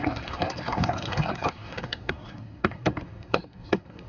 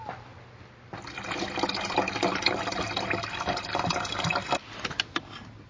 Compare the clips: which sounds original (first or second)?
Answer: second